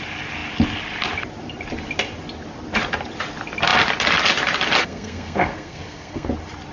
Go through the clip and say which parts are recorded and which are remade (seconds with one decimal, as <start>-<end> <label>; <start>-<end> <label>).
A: 0.0-4.8 recorded; 4.8-6.3 remade; 6.3-6.7 recorded

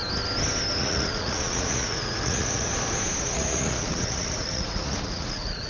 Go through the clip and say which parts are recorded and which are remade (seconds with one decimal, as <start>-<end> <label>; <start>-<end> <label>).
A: 0.0-0.8 recorded; 0.8-2.7 remade; 2.7-3.2 recorded; 3.2-5.7 remade

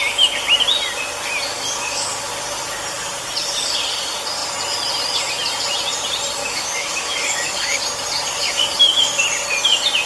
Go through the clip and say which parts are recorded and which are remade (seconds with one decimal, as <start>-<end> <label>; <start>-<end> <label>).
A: 0.0-1.5 recorded; 1.5-2.3 remade; 2.3-6.4 recorded; 6.4-7.8 remade; 7.8-8.4 recorded; 8.4-9.2 remade; 9.2-10.1 recorded

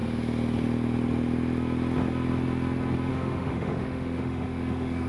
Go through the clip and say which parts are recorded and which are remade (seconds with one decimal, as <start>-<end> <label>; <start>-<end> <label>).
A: 0.0-3.1 recorded; 3.1-5.1 remade

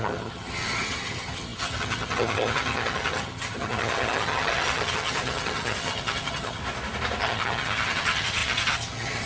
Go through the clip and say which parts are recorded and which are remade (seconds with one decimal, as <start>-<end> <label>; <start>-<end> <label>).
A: 0.0-6.6 remade; 6.6-7.2 recorded; 7.2-9.2 remade